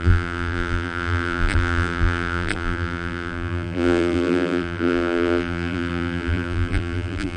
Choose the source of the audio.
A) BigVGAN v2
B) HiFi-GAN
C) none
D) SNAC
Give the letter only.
A